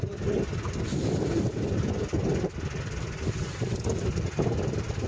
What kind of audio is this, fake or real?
real